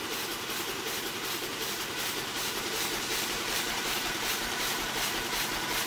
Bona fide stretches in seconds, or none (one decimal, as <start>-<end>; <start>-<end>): 0.0-2.3; 4.9-5.9